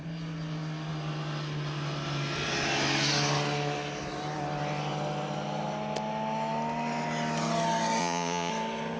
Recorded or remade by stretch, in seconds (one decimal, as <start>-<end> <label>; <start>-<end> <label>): 0.0-8.0 recorded; 8.0-8.5 remade; 8.5-9.0 recorded